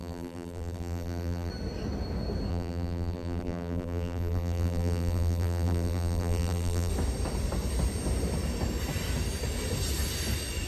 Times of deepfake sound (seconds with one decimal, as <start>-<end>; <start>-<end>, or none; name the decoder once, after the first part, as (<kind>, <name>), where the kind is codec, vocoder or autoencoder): 0.0-1.5 (vocoder, BigVGAN v2); 2.5-6.9